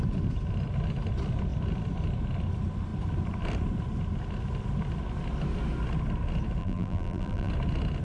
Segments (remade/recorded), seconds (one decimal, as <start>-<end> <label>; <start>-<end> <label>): 0.0-6.6 recorded; 6.6-7.5 remade; 7.5-8.0 recorded